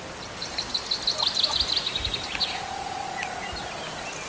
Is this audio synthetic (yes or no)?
no